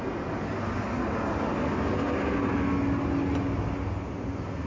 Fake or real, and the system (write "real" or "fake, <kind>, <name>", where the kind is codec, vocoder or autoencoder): real